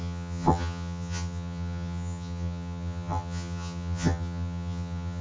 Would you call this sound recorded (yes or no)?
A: no